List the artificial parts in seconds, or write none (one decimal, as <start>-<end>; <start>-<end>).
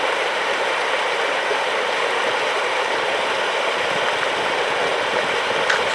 0.0-5.9